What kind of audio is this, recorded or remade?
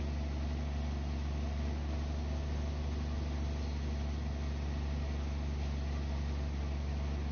recorded